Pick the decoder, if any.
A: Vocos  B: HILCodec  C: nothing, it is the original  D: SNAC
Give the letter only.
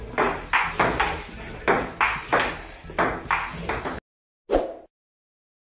C